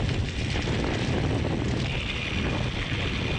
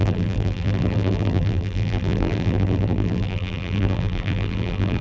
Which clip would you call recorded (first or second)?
first